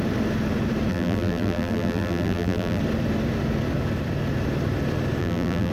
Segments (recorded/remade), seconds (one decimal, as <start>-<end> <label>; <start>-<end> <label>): 0.0-0.9 recorded; 0.9-2.8 remade; 2.8-5.2 recorded; 5.2-5.7 remade